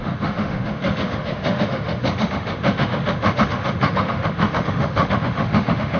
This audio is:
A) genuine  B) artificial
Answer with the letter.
B